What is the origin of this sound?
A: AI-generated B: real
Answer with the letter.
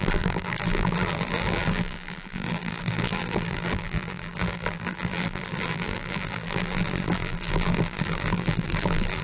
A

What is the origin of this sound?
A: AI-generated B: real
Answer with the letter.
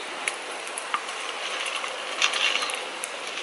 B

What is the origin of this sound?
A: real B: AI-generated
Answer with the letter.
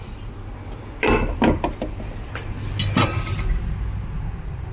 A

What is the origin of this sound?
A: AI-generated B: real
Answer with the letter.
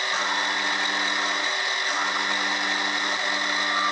B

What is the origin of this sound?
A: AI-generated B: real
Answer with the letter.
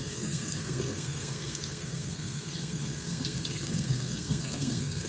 A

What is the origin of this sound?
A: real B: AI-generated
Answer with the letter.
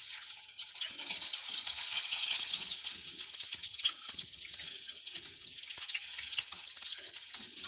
B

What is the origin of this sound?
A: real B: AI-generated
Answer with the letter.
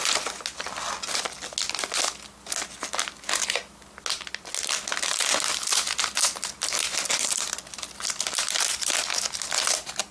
A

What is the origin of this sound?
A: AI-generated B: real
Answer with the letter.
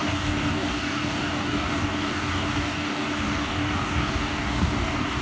A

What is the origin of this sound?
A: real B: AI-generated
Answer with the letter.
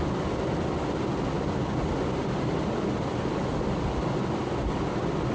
A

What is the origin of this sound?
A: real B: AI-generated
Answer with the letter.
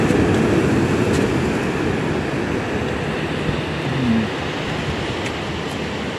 A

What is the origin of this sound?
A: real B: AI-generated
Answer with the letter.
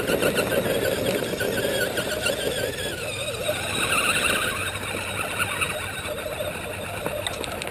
A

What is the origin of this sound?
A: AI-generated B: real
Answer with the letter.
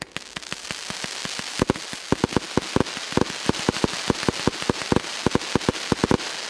B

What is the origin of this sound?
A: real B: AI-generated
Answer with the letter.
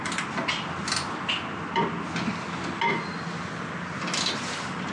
A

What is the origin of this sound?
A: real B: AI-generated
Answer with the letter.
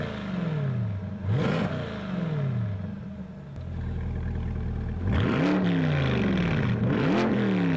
A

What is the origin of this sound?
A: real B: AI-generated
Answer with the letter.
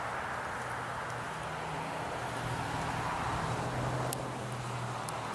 A